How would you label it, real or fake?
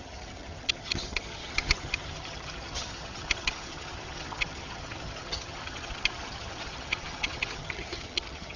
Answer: fake